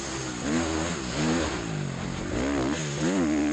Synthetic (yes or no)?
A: no